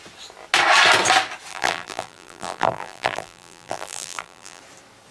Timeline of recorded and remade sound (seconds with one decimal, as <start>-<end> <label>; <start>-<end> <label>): 0.0-1.5 recorded; 1.5-4.6 remade; 4.6-5.1 recorded